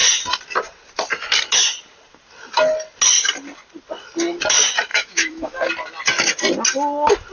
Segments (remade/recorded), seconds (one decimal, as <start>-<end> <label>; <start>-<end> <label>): 0.0-4.9 recorded; 4.9-5.7 remade; 5.7-7.3 recorded

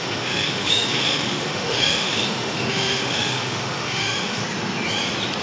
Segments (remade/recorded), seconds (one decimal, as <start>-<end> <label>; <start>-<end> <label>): 0.0-4.4 remade; 4.4-5.4 recorded

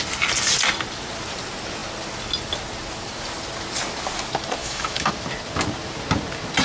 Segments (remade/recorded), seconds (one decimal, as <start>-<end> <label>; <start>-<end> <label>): 0.0-4.6 recorded; 4.6-5.1 remade; 5.1-6.6 recorded

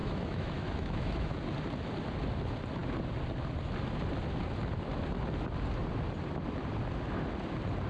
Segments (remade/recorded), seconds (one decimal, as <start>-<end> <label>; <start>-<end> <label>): 0.0-1.3 remade; 1.3-7.9 recorded